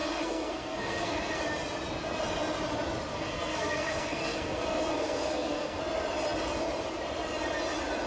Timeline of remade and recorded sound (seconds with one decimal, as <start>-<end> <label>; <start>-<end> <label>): 0.0-1.4 remade; 1.4-3.1 recorded; 3.1-5.8 remade; 5.8-8.1 recorded